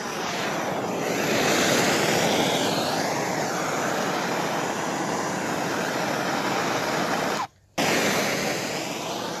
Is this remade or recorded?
recorded